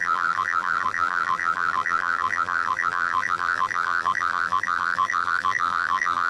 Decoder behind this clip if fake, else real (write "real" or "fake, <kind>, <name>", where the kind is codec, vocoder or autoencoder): fake, vocoder, BigVGAN v2